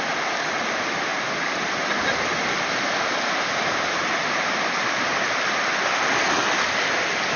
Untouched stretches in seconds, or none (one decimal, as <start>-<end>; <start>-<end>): 0.0-7.4